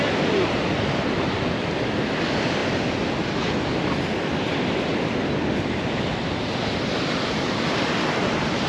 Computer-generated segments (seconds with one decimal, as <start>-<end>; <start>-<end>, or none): none